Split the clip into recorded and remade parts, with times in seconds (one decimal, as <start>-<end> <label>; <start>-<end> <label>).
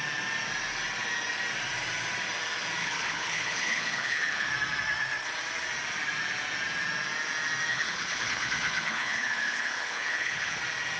0.0-2.8 recorded; 2.8-4.5 remade; 4.5-7.7 recorded; 7.7-10.6 remade; 10.6-11.0 recorded